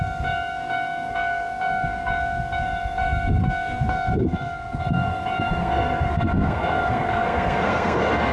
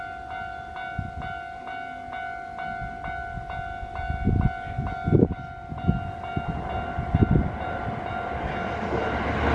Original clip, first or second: second